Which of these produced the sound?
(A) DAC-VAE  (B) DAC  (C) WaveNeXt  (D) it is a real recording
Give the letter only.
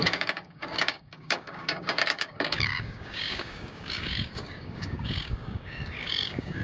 B